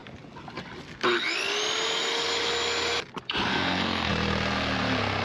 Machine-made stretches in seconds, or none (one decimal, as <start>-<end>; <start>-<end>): 3.5-4.1